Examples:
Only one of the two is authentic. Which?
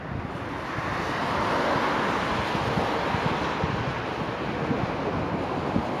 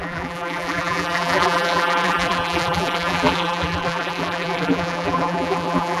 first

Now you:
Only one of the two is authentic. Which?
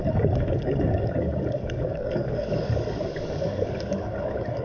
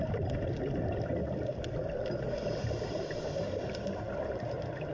second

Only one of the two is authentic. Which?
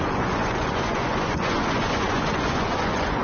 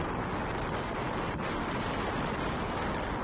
second